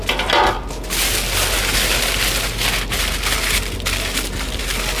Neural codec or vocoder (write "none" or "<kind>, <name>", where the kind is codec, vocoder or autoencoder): none